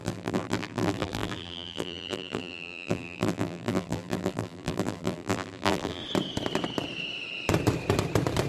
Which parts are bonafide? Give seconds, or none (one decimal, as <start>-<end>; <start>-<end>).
6.0-8.5